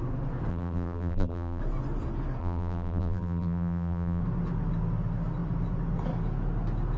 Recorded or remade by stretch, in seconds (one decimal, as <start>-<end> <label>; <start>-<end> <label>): 0.0-0.5 recorded; 0.5-1.6 remade; 1.6-2.4 recorded; 2.4-4.2 remade; 4.2-7.0 recorded